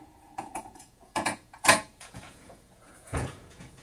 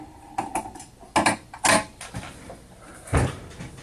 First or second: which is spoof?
first